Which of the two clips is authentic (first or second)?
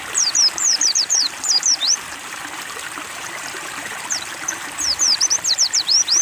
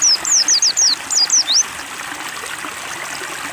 second